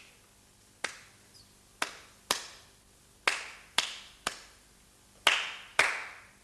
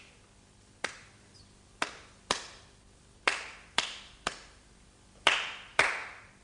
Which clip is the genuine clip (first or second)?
first